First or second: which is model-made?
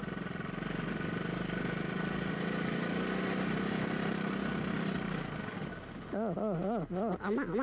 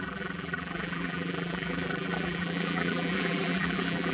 second